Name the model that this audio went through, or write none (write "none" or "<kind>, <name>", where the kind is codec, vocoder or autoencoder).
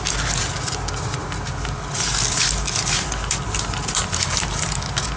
none